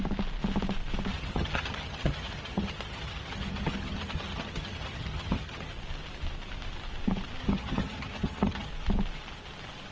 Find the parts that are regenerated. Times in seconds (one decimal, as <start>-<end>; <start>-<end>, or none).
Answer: 1.1-5.7; 7.4-8.7